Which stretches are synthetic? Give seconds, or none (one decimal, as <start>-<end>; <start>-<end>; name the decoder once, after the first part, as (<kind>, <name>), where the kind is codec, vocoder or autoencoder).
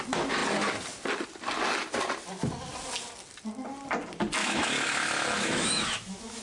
4.4-6.4 (autoencoder, DAC-VAE)